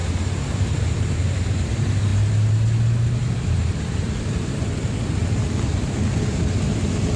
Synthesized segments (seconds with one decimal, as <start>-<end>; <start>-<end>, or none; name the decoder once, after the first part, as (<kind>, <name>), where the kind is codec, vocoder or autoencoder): 0.6-2.1 (vocoder, BigVGAN v2); 3.7-5.2; 5.7-7.2